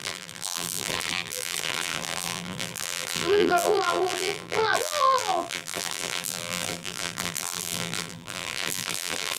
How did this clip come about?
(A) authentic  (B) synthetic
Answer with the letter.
B